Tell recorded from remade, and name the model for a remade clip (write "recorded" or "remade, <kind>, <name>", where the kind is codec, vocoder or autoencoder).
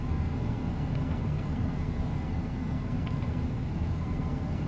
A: remade, codec, SNAC